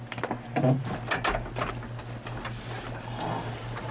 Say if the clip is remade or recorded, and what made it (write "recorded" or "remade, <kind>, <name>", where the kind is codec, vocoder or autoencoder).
recorded